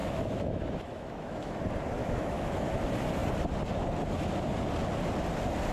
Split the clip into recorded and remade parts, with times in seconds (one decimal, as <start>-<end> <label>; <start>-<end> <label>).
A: 0.0-1.6 remade; 1.6-2.0 recorded; 2.0-2.7 remade; 2.7-5.7 recorded